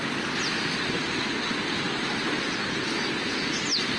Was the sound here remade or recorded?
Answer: recorded